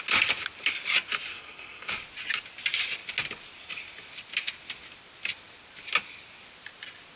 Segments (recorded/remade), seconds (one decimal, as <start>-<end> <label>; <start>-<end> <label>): 0.0-1.3 recorded; 1.3-1.9 remade; 1.9-7.2 recorded